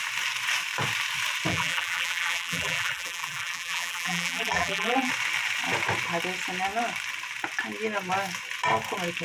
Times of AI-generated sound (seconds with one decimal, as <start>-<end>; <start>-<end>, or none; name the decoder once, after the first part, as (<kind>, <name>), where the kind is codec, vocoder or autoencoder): 1.5-5.1 (vocoder, BigVGAN v2)